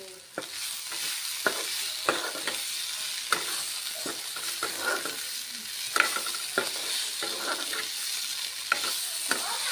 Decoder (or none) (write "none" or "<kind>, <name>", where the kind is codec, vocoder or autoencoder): none